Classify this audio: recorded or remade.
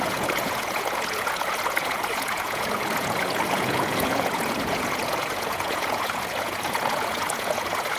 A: remade